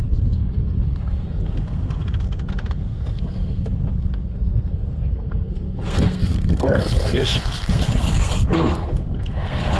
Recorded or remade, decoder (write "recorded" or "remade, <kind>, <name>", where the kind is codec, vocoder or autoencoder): remade, codec, SNAC